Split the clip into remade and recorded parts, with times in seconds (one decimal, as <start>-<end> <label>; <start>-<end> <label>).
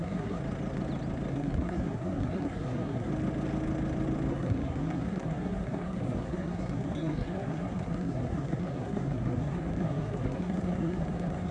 0.0-0.4 remade; 0.4-1.3 recorded; 1.3-3.1 remade; 3.1-4.3 recorded; 4.3-11.5 remade